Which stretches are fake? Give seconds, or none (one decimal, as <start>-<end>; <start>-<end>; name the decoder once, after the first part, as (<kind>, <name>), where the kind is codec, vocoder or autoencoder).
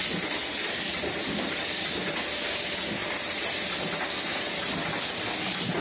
0.4-2.0 (vocoder, BigVGAN v2)